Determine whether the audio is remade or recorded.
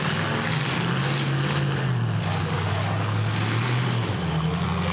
recorded